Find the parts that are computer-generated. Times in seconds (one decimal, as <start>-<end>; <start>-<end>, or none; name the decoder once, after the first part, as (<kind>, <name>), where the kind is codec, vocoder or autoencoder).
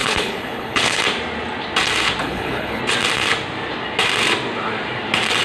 0.0-1.0 (codec, HILCodec); 2.2-2.8